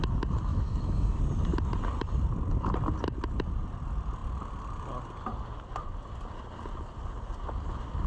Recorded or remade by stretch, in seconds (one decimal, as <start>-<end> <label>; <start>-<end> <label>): 0.0-0.5 recorded; 0.5-1.2 remade; 1.2-8.1 recorded